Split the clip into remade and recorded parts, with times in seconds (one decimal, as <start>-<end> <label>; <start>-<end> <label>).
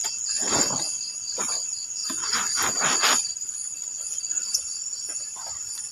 0.0-5.9 recorded